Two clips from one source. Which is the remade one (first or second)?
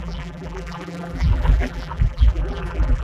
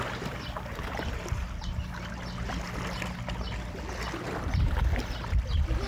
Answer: first